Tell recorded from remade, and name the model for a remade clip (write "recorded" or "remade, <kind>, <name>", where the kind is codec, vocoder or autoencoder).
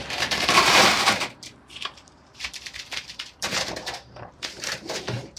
remade, vocoder, BigVGAN v2